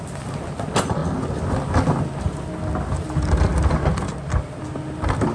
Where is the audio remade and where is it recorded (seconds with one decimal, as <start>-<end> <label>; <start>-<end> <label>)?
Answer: 0.0-5.3 recorded